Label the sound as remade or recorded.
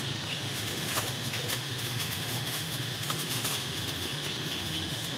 remade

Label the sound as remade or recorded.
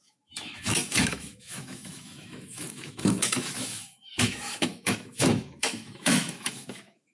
remade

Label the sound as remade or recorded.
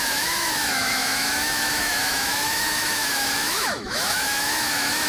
remade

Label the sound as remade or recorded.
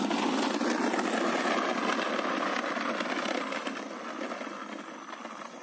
recorded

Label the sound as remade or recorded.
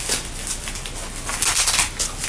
recorded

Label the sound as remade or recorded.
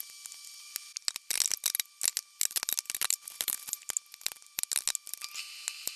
recorded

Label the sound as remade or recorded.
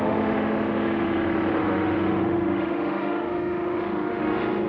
remade